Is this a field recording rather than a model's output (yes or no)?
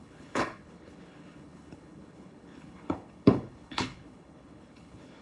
no